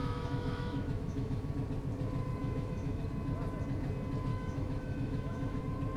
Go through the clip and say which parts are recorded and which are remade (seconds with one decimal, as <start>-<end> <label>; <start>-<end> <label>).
0.0-1.5 remade; 1.5-2.4 recorded; 2.4-3.0 remade; 3.0-4.3 recorded; 4.3-5.6 remade; 5.6-6.0 recorded